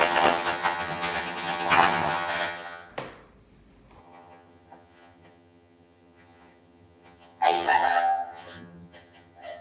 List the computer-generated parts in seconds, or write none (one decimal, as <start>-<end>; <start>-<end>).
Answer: 0.0-2.9; 4.0-9.6

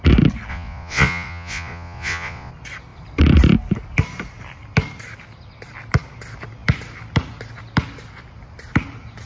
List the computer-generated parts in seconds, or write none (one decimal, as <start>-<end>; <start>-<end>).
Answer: 0.5-2.5

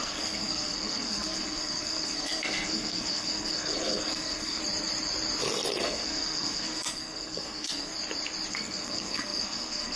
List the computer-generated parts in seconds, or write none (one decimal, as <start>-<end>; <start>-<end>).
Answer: 0.0-4.6; 5.8-7.9; 8.5-10.0

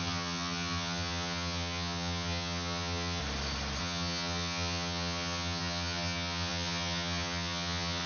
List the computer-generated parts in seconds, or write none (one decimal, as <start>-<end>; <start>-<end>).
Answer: 0.0-3.2; 3.8-8.1